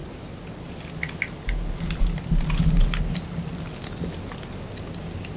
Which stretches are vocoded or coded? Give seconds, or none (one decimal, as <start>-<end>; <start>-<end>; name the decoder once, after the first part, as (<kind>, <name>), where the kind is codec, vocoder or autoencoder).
none